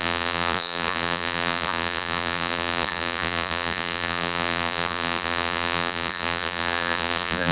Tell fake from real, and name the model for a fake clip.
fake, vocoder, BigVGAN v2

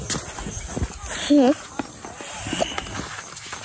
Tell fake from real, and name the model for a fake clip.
real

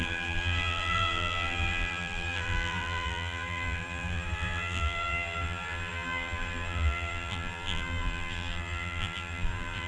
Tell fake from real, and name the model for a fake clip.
fake, vocoder, BigVGAN v2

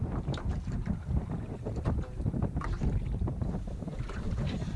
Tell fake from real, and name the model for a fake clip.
fake, vocoder, BigVGAN v2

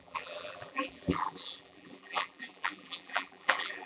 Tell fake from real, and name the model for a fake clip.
fake, vocoder, BigVGAN v2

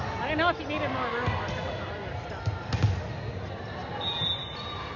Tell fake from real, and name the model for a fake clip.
real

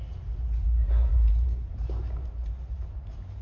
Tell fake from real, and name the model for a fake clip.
fake, vocoder, BigVGAN v2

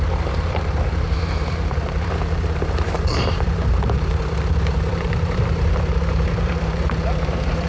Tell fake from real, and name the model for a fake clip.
fake, vocoder, BigVGAN v2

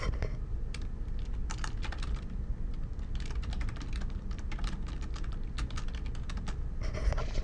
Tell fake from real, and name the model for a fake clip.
fake, vocoder, BigVGAN v2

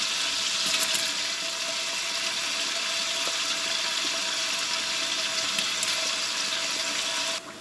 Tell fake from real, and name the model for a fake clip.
real